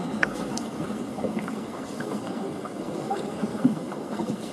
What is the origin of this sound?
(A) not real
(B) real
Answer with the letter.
A